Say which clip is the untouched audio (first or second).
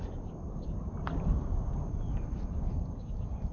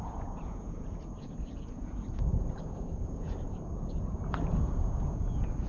first